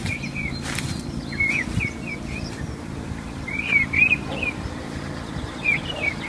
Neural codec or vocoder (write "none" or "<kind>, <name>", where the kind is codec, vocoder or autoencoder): none